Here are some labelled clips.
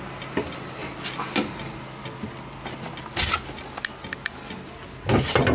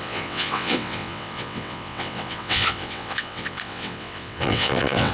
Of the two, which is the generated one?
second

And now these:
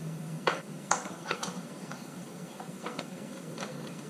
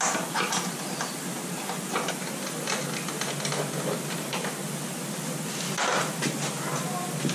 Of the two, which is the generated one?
first